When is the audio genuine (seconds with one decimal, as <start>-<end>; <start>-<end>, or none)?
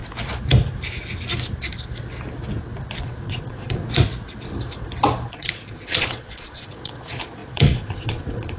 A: 0.0-3.0; 3.8-5.3